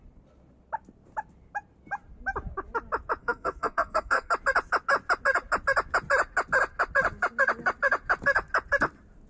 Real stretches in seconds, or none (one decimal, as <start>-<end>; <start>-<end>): 0.0-3.2; 4.3-9.3